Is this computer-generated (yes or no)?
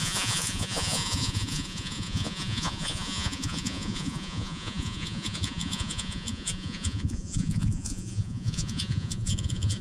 yes